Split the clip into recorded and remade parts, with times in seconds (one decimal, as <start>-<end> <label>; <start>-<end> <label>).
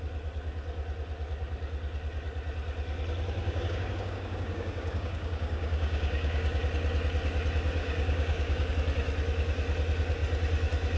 0.0-3.4 recorded; 3.4-6.6 remade; 6.6-7.8 recorded; 7.8-8.7 remade; 8.7-11.0 recorded